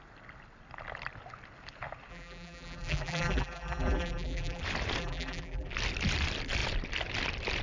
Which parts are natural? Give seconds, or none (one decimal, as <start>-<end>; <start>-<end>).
0.0-2.1; 4.6-5.0; 5.7-7.6